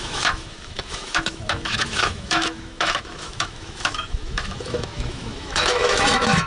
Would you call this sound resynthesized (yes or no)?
yes